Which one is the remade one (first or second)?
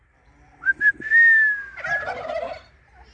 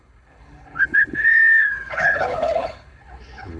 second